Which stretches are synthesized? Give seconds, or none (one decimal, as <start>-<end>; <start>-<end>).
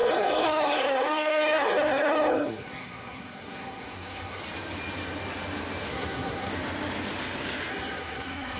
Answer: 0.0-4.4; 5.9-6.5; 7.7-8.6